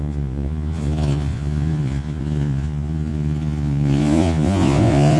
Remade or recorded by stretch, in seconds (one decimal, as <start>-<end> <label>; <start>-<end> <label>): 0.0-5.2 remade